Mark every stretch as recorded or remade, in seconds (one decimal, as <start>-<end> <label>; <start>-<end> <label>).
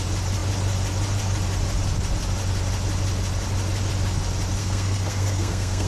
0.0-4.6 recorded; 4.6-5.9 remade